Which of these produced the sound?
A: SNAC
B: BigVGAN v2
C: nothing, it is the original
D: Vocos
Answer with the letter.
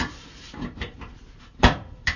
B